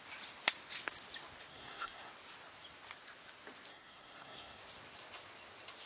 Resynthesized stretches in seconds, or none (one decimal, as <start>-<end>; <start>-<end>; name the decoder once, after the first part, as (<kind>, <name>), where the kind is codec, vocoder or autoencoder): 1.5-2.1 (codec, SNAC); 3.7-4.6

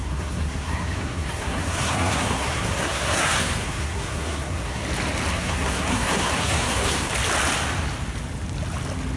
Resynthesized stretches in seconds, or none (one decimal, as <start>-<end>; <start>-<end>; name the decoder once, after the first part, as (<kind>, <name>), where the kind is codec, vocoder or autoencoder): 0.0-4.8 (codec, SNAC); 5.3-7.1

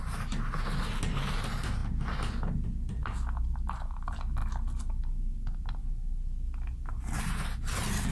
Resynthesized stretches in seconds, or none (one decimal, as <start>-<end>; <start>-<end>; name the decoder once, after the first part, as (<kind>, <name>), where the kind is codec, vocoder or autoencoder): none